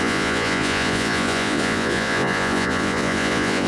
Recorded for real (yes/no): no